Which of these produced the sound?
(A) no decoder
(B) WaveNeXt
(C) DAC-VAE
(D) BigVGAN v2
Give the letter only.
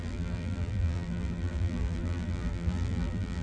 D